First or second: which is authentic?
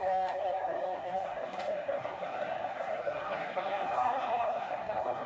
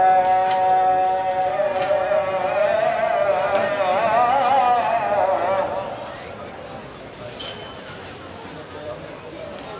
second